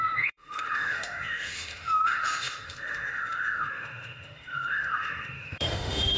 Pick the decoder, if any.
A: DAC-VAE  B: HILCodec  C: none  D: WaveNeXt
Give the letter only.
A